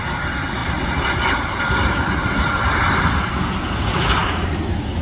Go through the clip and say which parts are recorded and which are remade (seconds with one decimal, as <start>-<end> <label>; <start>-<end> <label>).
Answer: 0.0-0.6 recorded; 0.6-1.6 remade; 1.6-4.2 recorded; 4.2-5.0 remade